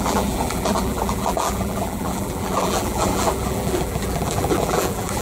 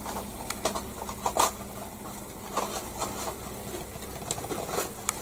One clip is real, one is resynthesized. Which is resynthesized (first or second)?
first